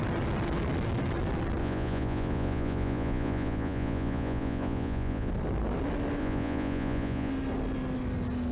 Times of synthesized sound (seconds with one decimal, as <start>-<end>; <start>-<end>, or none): 1.6-5.3; 6.2-7.3